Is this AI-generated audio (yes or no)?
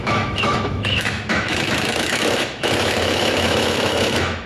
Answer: yes